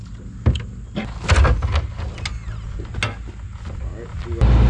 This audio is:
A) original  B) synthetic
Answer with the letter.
A